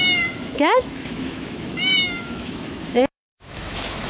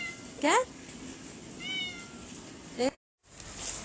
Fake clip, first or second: first